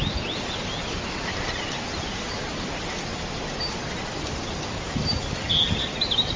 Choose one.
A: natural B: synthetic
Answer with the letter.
A